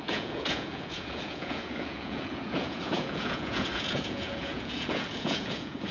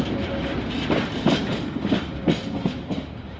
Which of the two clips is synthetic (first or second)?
first